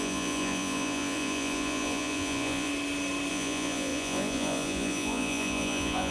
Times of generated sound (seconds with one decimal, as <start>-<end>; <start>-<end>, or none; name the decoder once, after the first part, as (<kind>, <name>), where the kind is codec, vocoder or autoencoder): 0.0-2.7 (vocoder, Vocos); 3.3-6.1